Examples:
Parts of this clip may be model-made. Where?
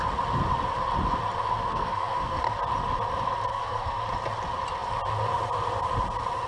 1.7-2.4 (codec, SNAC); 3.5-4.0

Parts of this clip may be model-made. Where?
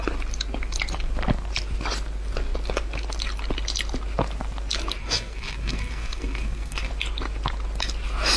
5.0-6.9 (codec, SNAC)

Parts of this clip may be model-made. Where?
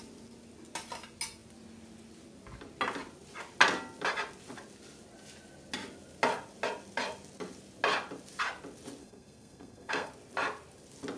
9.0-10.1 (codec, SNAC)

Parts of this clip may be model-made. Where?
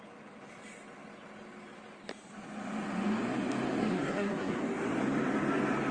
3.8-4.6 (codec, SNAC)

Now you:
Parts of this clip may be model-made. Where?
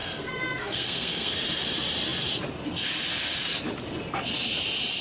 0.0-1.3 (codec, SNAC)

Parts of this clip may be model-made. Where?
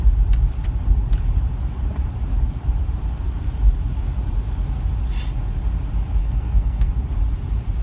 6.2-6.9 (codec, SNAC)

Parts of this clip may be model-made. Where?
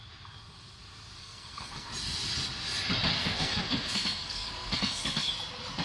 1.2-1.9 (codec, SNAC); 3.1-5.3